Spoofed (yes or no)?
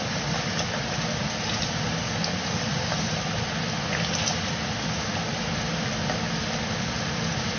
no